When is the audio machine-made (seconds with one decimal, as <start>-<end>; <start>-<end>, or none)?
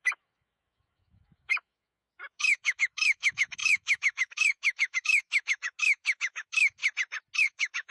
0.0-6.8; 7.4-7.9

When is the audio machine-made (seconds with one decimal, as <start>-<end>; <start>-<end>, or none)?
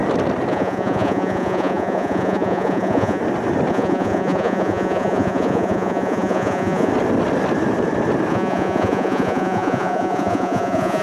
0.5-3.2; 3.7-6.9; 8.3-11.0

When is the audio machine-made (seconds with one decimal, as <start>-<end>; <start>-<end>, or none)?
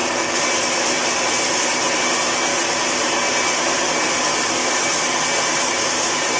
none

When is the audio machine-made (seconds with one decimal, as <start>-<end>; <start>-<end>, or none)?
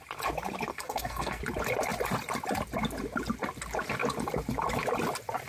0.7-1.4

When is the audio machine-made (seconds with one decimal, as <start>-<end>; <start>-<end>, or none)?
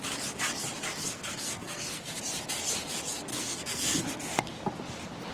1.0-2.2; 3.3-4.0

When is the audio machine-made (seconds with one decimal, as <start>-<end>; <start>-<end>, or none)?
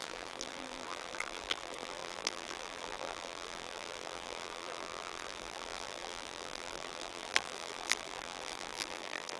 0.0-9.4